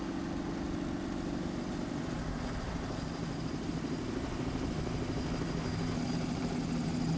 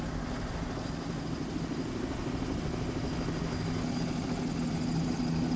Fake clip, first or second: first